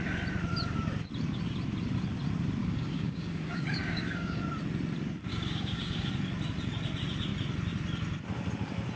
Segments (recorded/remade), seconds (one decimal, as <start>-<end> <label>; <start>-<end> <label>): 0.0-2.6 recorded; 2.6-4.4 remade; 4.4-5.3 recorded; 5.3-6.1 remade; 6.1-9.0 recorded